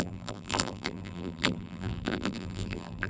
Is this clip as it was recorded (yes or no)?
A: no